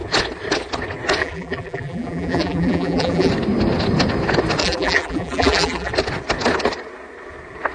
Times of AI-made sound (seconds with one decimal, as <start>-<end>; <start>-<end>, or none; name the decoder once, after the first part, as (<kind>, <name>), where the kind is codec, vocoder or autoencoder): 1.2-3.3 (vocoder, BigVGAN v2); 4.6-5.9